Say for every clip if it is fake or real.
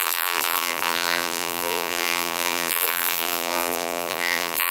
fake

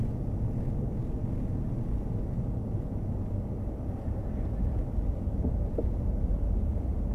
real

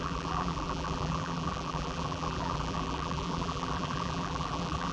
fake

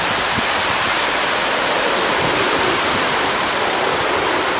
fake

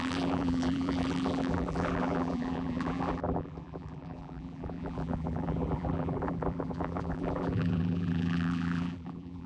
fake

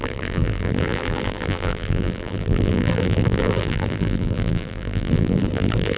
fake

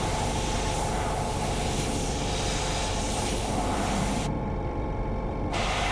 fake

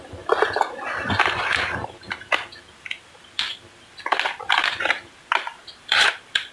real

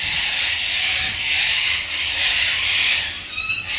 fake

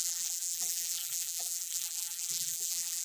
fake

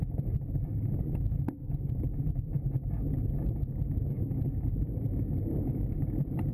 fake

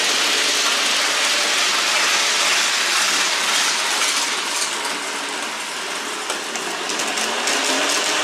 real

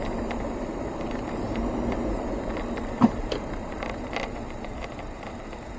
fake